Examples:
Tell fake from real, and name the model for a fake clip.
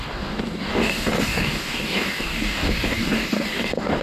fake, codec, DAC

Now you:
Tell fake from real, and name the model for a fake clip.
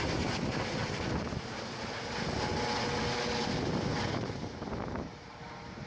real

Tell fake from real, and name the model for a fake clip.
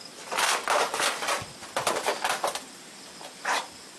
fake, vocoder, BigVGAN v2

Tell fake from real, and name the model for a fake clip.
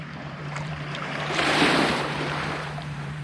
fake, vocoder, BigVGAN v2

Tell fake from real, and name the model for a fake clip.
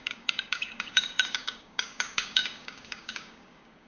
fake, codec, DAC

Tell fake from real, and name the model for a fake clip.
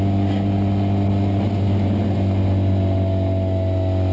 real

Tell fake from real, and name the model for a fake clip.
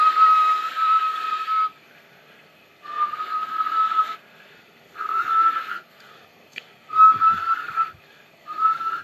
fake, codec, SNAC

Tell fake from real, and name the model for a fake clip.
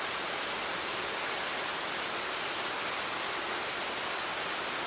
real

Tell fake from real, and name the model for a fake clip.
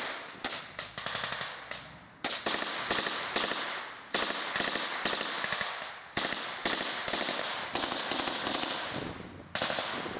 real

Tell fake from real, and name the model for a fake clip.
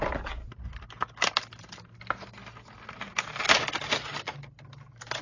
real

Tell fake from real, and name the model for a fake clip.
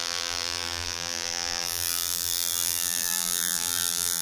fake, vocoder, BigVGAN v2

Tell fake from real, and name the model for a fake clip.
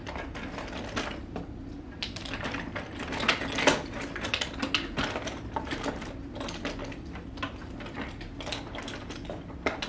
real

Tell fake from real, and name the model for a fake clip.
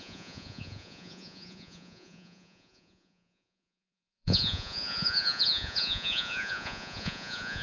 fake, vocoder, Vocos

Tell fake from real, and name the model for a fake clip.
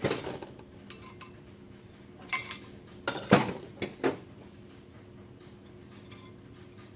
real